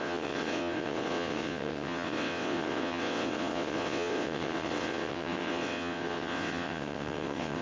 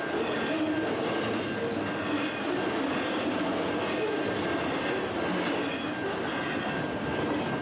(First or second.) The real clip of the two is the second